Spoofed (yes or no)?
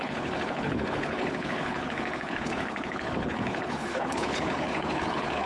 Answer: yes